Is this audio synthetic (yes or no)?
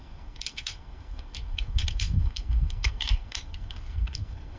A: yes